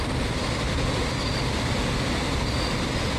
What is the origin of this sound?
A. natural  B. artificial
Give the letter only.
A